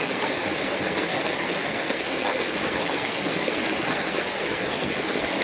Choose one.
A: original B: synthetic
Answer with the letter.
B